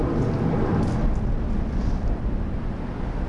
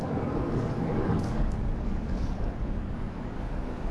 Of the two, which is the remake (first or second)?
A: second